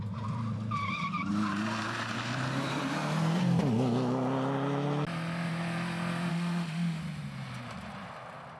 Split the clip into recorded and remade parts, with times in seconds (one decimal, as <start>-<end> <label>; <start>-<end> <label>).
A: 0.0-6.3 recorded; 6.3-7.0 remade; 7.0-8.6 recorded